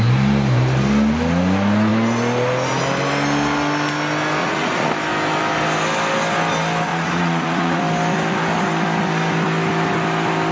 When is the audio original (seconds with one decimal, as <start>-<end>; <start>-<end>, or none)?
0.0-4.4; 4.9-6.9; 7.8-10.5